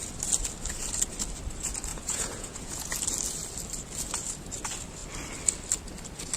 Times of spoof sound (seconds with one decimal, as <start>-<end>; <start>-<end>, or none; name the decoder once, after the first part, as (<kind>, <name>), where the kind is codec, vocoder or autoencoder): 1.9-2.9 (vocoder, Vocos)